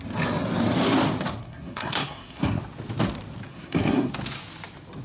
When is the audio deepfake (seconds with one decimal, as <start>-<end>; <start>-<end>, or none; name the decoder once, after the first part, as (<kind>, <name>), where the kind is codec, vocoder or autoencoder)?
1.4-2.6 (codec, SNAC); 3.5-4.1